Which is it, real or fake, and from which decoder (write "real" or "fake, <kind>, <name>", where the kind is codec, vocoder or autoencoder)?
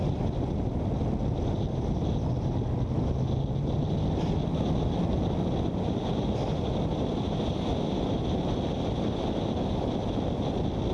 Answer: real